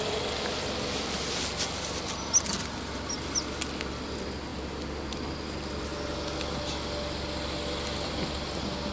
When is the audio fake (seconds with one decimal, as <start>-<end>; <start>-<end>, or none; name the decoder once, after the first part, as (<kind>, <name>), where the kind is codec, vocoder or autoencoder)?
none